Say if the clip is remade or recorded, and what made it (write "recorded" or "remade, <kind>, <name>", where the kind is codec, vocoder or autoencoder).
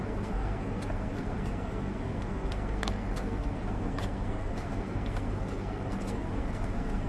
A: remade, codec, SNAC